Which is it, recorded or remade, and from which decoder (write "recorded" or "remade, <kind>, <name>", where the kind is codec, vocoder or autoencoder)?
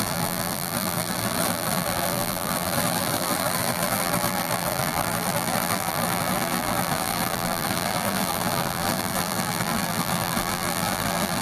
remade, vocoder, BigVGAN v2